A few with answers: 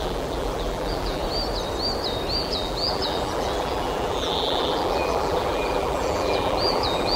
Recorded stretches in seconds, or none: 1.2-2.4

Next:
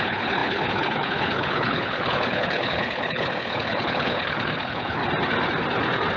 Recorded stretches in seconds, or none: 5.0-6.2

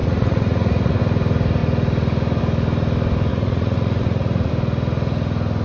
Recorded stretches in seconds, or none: 1.0-3.3; 4.5-5.6

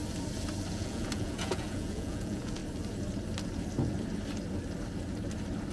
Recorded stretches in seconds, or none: 0.0-0.7; 2.6-5.7

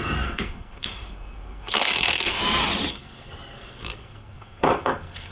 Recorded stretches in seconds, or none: 2.4-2.9

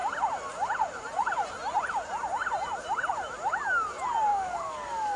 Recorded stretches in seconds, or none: 0.0-4.3

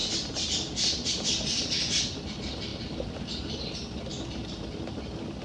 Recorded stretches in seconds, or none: 0.0-5.4